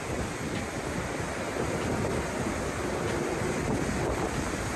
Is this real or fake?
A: real